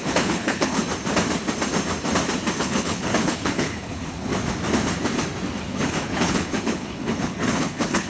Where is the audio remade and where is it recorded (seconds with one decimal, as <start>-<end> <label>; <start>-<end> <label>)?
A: 0.0-0.8 remade; 0.8-2.6 recorded; 2.6-4.3 remade; 4.3-5.6 recorded; 5.6-8.1 remade